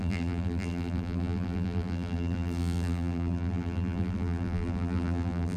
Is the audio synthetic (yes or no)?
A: yes